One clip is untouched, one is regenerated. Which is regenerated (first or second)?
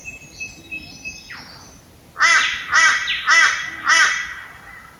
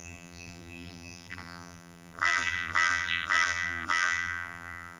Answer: second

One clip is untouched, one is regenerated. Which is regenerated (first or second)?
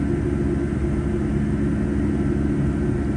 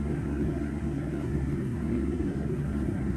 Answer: second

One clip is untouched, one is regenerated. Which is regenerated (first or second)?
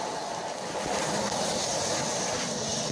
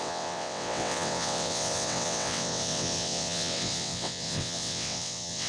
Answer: second